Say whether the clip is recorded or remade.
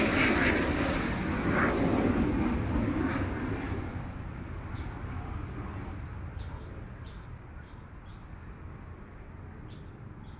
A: recorded